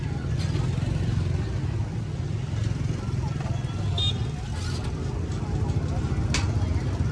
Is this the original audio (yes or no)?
yes